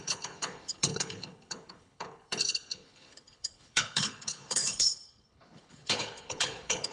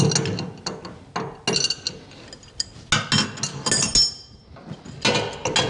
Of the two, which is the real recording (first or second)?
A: second